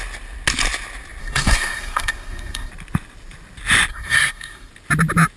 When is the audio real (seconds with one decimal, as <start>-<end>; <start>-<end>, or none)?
0.0-1.2; 2.7-3.9; 4.7-5.4